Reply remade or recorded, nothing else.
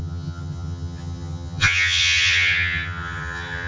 remade